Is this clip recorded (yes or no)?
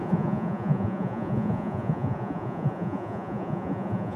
no